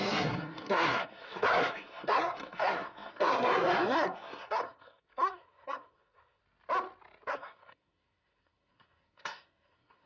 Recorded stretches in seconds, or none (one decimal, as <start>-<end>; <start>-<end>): 6.4-7.3